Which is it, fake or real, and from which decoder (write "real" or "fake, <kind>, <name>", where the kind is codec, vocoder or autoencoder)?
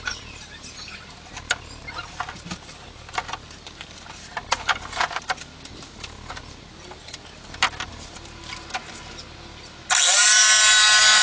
real